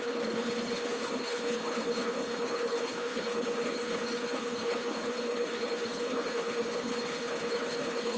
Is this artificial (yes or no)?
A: yes